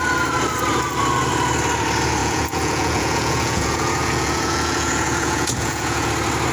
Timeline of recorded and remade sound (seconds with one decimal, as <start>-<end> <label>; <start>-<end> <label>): 0.0-2.2 recorded; 2.2-6.1 remade; 6.1-6.5 recorded